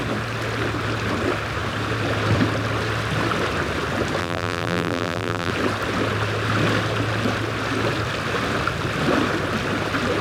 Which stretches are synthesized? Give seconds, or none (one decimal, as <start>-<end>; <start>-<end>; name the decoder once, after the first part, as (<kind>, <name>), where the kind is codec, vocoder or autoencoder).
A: 4.2-5.5 (vocoder, BigVGAN v2)